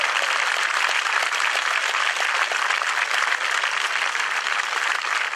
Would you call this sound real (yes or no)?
yes